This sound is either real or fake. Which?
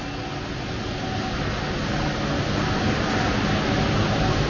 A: real